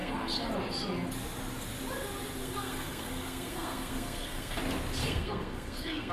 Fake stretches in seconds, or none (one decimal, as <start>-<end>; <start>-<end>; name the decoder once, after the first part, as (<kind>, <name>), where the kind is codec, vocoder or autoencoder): 0.0-0.5 (codec, SNAC); 2.4-4.6; 5.0-6.1